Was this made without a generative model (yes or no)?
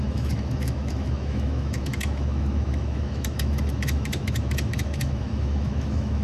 no